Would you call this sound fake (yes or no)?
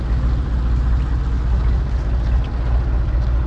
no